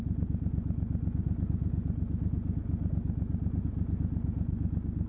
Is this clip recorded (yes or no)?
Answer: yes